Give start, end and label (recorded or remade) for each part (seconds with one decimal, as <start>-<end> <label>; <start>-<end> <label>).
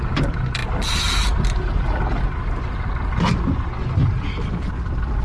0.0-5.2 recorded